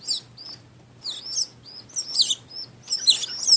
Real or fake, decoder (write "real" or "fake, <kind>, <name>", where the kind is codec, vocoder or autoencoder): real